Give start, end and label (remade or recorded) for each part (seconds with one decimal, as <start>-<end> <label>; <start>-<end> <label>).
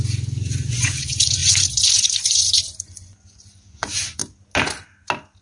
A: 0.0-4.2 remade; 4.2-5.4 recorded